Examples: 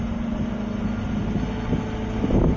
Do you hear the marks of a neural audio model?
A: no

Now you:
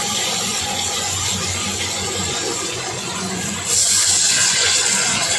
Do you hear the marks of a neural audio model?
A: yes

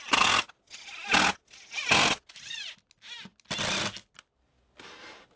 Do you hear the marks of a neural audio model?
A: no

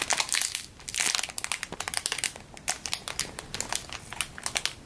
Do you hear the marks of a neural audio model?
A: no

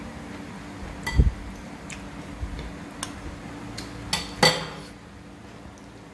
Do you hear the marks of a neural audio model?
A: no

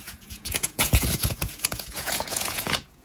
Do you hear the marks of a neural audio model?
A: yes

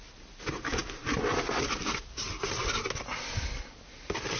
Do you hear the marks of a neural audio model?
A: no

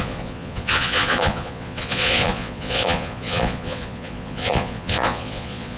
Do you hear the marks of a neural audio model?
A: yes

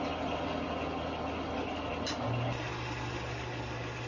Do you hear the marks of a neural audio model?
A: no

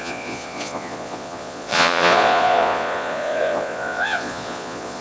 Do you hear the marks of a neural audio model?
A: yes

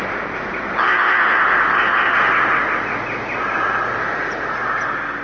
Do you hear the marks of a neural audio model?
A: no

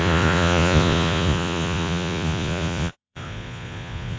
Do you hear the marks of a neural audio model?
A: yes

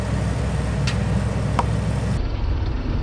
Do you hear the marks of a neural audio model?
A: no